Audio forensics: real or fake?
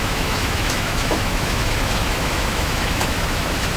fake